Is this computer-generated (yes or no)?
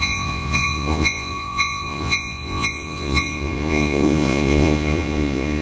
yes